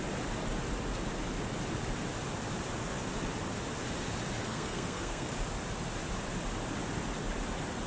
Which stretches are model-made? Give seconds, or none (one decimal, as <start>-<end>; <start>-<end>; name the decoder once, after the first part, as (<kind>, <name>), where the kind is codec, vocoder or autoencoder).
4.4-5.3 (codec, SNAC)